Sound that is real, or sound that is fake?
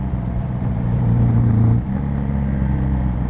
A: fake